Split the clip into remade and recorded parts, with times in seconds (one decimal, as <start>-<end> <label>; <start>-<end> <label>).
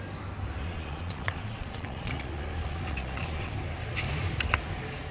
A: 0.0-0.6 recorded; 0.6-3.5 remade; 3.5-5.1 recorded